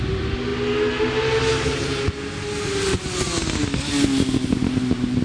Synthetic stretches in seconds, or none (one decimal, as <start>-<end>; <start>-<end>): none

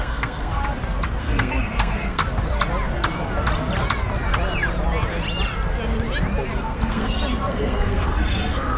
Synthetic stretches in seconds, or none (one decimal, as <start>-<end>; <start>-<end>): 0.0-0.6; 1.2-2.2; 6.6-8.8

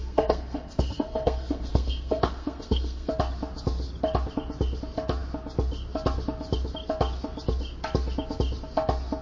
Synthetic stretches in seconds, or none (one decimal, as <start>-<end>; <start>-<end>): 0.0-3.1

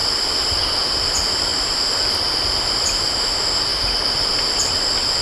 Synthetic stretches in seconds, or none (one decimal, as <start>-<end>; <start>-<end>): none

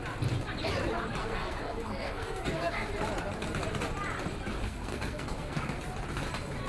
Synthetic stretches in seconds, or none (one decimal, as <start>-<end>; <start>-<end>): 1.2-2.9; 4.6-5.8

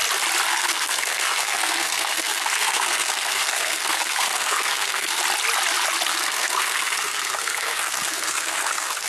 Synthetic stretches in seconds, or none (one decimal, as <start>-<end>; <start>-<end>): 0.5-5.2; 6.1-9.1

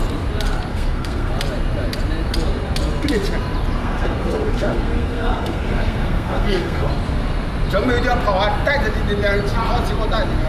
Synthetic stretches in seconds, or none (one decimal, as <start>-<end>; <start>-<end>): 0.7-1.3; 3.8-6.9

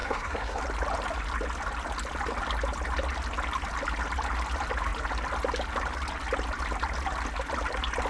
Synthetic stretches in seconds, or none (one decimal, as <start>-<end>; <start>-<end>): 0.0-0.6